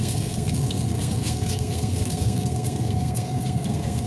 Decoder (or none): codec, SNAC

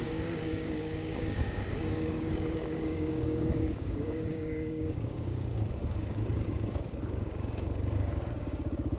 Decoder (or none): codec, DAC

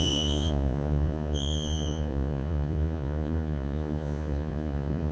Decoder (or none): vocoder, Vocos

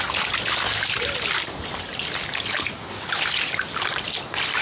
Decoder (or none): none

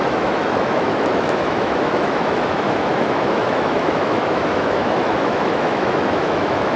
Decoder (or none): autoencoder, DAC-VAE